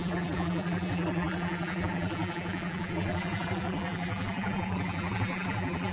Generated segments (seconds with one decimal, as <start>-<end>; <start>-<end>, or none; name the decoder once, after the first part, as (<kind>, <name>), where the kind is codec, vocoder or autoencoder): 0.0-5.9 (vocoder, BigVGAN v2)